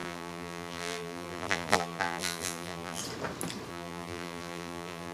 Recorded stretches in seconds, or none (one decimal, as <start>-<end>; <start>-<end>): 3.0-3.7